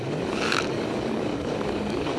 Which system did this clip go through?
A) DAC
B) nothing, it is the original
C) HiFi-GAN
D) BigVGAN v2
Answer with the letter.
A